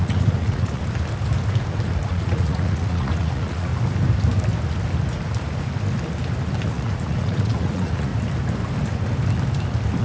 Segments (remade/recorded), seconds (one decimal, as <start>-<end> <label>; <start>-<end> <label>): 0.0-0.8 remade; 0.8-2.0 recorded; 2.0-3.7 remade; 3.7-6.7 recorded; 6.7-8.1 remade; 8.1-10.0 recorded